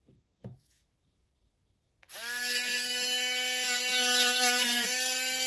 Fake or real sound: fake